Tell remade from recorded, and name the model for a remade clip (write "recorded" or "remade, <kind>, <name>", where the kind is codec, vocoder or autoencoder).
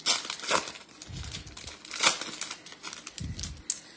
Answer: recorded